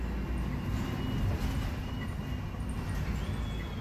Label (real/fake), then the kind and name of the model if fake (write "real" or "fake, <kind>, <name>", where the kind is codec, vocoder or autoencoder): real